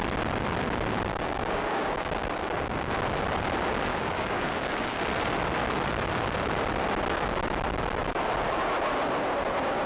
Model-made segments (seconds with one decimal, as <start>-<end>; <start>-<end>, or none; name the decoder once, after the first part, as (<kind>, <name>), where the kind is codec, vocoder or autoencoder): 1.1-2.9 (codec, DAC); 3.9-5.0